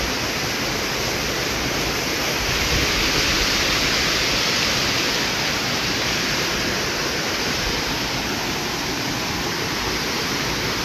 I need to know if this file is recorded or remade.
recorded